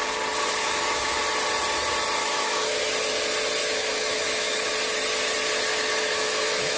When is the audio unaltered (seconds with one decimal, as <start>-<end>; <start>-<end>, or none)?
0.0-0.6; 1.2-2.2; 2.8-3.6; 4.7-5.7